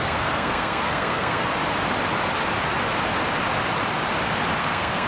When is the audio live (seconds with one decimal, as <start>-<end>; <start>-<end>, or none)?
1.5-4.6